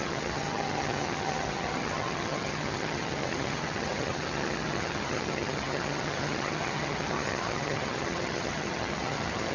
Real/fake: fake